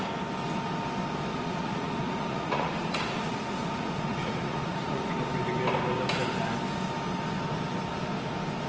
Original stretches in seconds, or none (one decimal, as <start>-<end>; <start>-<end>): 0.0-1.3; 5.2-8.7